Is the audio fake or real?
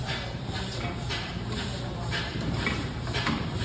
fake